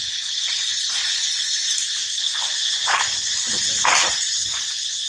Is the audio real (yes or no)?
yes